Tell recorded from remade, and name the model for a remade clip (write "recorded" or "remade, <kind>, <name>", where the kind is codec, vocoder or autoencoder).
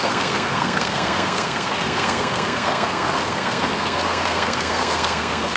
remade, codec, SNAC